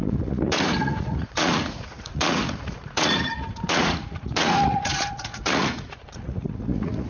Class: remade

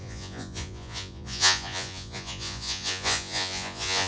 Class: remade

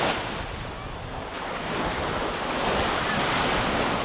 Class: recorded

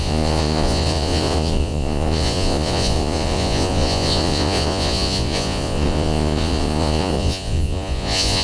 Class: remade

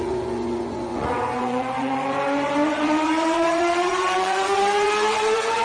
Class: remade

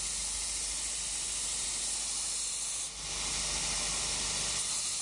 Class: recorded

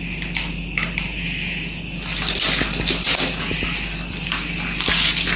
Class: recorded